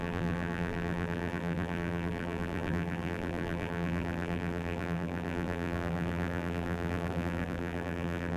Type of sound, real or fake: fake